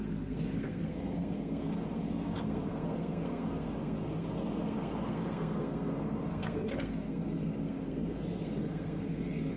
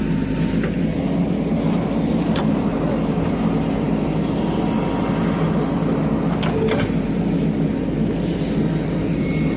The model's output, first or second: first